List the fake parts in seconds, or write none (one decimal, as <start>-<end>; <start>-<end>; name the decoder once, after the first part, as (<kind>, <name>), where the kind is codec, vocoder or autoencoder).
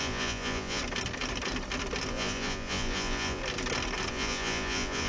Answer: 0.0-0.8 (vocoder, Vocos); 2.1-3.4; 4.1-5.1